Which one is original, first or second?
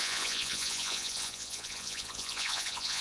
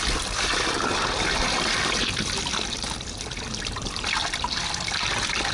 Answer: second